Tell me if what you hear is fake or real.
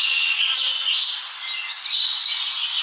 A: real